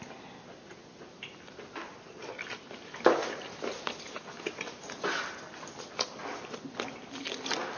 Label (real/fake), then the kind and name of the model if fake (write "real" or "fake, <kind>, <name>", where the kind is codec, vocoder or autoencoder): real